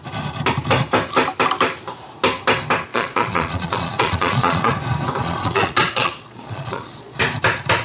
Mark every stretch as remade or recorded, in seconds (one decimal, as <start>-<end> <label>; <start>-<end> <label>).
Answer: 0.0-2.9 recorded; 2.9-4.7 remade; 4.7-5.2 recorded; 5.2-7.2 remade; 7.2-7.8 recorded